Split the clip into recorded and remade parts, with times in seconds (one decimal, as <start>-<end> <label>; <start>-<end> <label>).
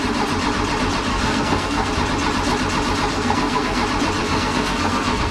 0.0-1.1 recorded; 1.1-1.9 remade; 1.9-3.1 recorded; 3.1-3.8 remade; 3.8-4.2 recorded; 4.2-5.3 remade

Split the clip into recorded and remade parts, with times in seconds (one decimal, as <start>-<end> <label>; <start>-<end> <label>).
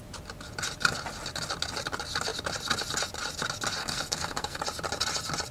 0.0-3.8 recorded; 3.8-4.6 remade; 4.6-5.5 recorded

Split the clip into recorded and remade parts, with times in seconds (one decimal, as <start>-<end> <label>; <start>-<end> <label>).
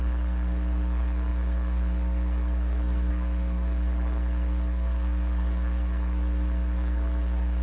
0.0-7.6 remade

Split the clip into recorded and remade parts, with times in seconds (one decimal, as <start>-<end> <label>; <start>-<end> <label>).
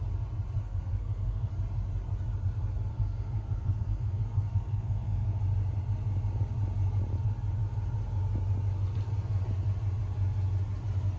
0.0-0.6 recorded; 0.6-1.5 remade; 1.5-2.9 recorded; 2.9-5.4 remade; 5.4-11.2 recorded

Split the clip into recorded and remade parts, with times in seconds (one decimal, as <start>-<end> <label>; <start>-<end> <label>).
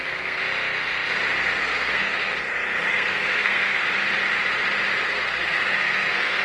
0.0-0.4 remade; 0.4-1.6 recorded; 1.6-2.3 remade; 2.3-2.9 recorded; 2.9-3.8 remade; 3.8-5.0 recorded; 5.0-6.4 remade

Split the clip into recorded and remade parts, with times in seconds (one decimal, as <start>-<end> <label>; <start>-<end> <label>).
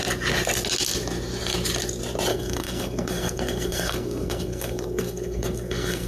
0.0-2.3 recorded; 2.3-6.1 remade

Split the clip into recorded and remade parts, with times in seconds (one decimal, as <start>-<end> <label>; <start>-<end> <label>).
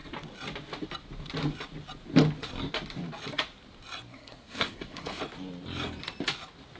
0.0-4.1 recorded; 4.1-5.2 remade; 5.2-6.8 recorded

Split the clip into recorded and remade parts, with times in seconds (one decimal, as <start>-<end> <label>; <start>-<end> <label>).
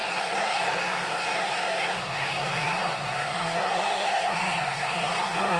0.0-5.6 remade